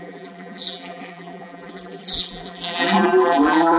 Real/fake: fake